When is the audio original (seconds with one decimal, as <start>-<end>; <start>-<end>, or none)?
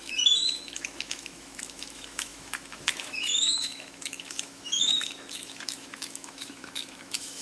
none